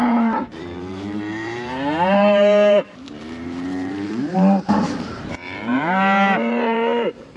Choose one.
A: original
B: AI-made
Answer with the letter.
B